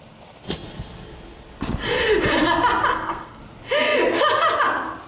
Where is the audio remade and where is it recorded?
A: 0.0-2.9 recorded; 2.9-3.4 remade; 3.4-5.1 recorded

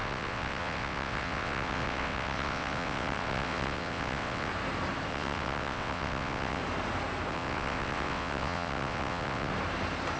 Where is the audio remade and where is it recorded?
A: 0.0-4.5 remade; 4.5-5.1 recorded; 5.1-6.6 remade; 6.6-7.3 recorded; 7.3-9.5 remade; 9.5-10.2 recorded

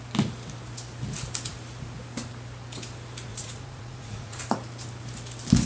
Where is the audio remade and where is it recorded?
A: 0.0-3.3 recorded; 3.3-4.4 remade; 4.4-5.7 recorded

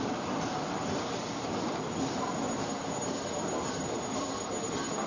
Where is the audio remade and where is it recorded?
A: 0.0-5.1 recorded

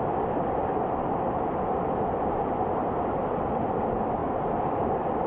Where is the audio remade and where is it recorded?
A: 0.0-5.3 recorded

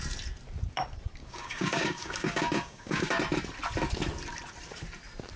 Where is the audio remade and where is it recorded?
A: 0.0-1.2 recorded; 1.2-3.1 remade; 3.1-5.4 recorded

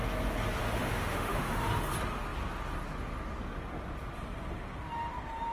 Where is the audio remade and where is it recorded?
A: 0.0-0.6 recorded; 0.6-1.7 remade; 1.7-5.5 recorded